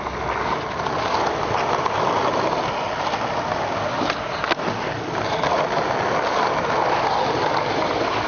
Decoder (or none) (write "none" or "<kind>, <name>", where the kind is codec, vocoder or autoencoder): none